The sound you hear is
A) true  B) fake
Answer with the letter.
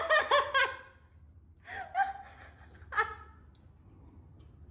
A